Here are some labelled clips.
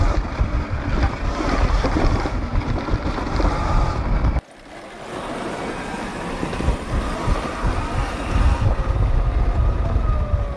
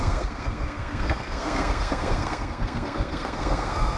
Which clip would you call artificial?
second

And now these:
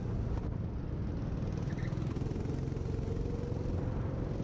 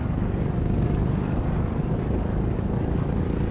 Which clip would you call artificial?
second